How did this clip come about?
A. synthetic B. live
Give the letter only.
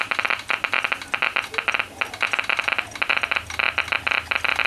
B